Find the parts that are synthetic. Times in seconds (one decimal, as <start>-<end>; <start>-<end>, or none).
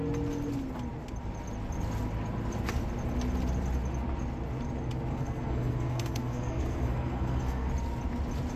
5.1-7.7